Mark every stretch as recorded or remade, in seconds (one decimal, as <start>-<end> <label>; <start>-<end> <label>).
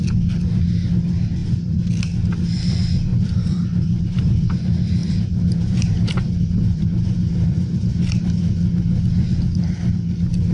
0.0-1.4 recorded; 1.4-1.9 remade; 1.9-3.1 recorded; 3.1-4.5 remade; 4.5-5.0 recorded; 5.0-8.2 remade; 8.2-10.5 recorded